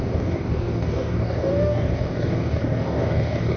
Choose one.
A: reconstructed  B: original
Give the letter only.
A